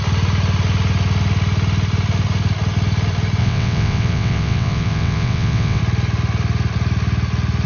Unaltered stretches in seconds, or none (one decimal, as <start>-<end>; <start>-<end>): 0.0-3.4; 5.8-7.7

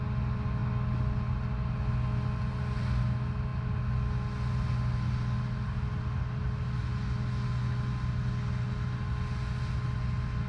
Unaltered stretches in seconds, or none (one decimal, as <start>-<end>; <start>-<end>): 0.0-10.5

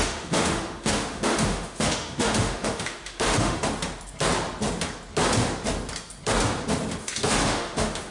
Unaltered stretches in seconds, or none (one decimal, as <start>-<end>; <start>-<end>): 3.6-7.0